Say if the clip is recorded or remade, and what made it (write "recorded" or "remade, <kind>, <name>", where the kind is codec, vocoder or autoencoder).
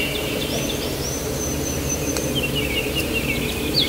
remade, vocoder, BigVGAN v2